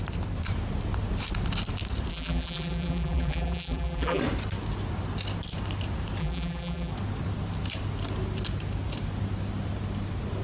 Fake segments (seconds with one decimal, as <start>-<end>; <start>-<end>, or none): 2.1-4.2; 6.2-6.9